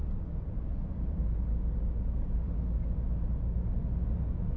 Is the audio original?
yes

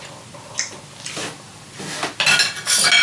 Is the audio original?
yes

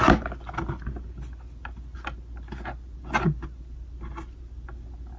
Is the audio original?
yes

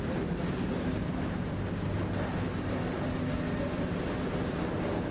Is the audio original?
yes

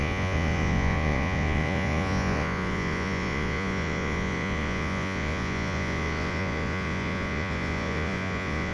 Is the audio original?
no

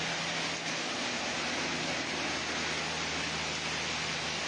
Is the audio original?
yes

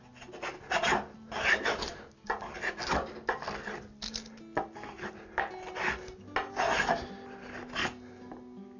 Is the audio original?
yes